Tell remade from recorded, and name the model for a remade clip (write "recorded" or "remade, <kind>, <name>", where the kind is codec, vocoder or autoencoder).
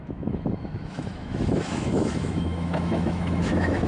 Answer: remade, autoencoder, DAC-VAE